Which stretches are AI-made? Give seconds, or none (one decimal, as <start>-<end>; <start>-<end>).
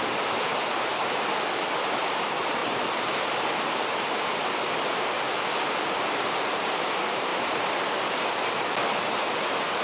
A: 2.6-3.2; 7.3-8.1